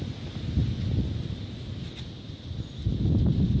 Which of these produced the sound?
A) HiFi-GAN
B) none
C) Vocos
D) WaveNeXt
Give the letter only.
B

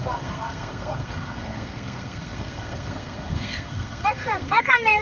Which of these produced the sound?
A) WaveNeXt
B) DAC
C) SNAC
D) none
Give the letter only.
C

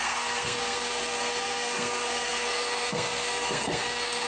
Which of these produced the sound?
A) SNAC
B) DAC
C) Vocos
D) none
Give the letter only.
A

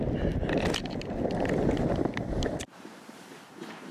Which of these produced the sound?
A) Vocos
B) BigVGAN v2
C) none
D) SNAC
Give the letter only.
C